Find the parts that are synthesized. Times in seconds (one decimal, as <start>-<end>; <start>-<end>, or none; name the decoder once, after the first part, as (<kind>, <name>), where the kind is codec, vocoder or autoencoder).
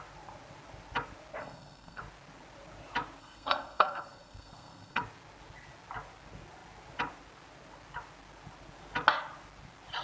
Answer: 1.4-2.0 (codec, SNAC); 3.2-5.0